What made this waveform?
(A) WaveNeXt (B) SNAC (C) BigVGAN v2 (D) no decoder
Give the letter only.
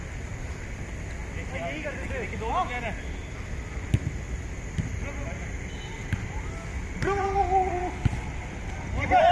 D